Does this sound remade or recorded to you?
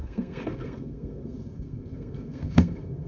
remade